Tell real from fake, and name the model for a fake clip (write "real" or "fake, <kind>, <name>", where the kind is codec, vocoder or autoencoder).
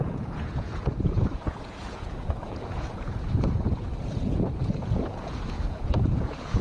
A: fake, vocoder, Vocos